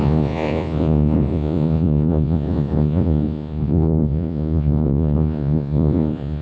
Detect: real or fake fake